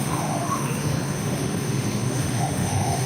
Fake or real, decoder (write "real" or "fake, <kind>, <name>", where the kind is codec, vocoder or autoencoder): fake, autoencoder, DAC-VAE